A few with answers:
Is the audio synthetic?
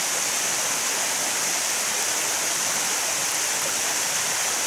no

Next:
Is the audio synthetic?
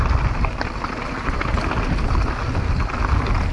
no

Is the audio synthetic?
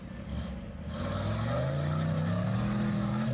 no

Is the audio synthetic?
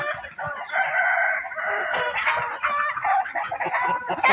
no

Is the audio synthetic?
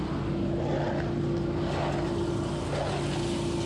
no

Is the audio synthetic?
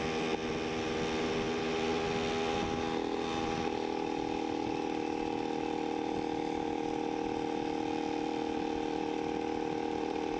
no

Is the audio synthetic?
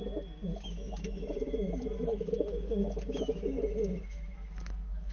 yes